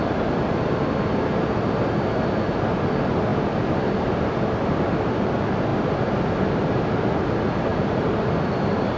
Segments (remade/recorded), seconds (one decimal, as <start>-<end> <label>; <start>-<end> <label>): 0.0-5.7 recorded; 5.7-6.2 remade; 6.2-7.7 recorded; 7.7-8.3 remade; 8.3-9.0 recorded